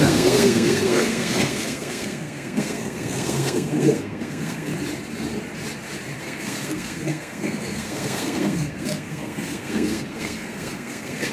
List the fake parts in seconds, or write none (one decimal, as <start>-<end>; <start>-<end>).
0.0-4.7; 6.2-11.3

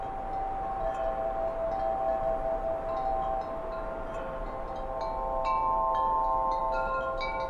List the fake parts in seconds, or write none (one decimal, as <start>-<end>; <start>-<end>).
none

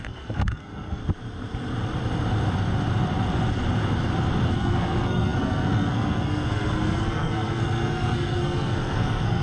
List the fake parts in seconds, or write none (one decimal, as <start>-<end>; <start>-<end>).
0.0-1.0; 4.5-9.4